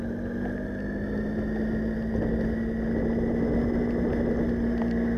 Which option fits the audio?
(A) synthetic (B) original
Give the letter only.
B